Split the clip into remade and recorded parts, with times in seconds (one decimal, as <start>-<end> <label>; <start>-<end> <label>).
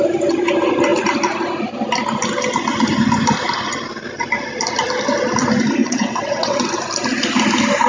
0.0-5.8 recorded; 5.8-6.6 remade; 6.6-7.9 recorded